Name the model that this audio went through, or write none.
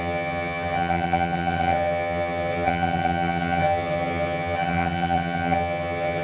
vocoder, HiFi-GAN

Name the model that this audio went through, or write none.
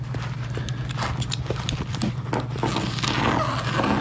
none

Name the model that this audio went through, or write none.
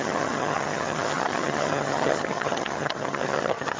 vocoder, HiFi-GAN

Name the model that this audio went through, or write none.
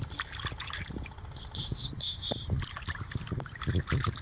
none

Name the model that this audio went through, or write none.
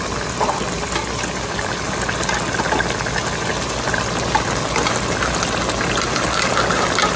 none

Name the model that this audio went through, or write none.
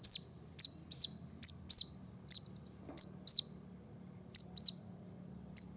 none